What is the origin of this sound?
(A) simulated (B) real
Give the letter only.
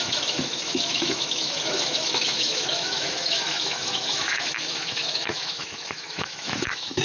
A